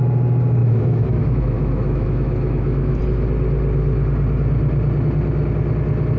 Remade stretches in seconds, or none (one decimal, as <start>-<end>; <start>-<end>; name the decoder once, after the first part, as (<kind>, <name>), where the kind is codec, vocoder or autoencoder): 0.6-3.0 (autoencoder, DAC-VAE)